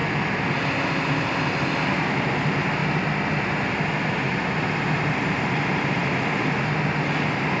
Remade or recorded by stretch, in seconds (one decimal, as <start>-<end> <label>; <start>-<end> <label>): 0.0-7.6 recorded